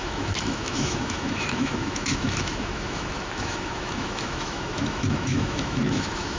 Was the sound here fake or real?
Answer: fake